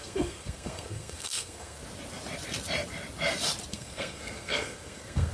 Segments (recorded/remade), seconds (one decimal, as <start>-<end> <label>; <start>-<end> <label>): 0.0-1.8 remade; 1.8-3.7 recorded; 3.7-5.3 remade